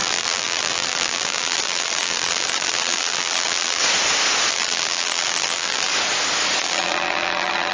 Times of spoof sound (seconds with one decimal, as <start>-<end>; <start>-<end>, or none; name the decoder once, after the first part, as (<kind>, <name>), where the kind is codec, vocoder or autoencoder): 0.0-3.8 (vocoder, BigVGAN v2); 4.5-5.9; 6.6-7.7